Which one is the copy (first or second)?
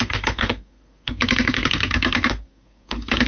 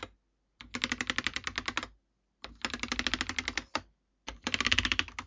first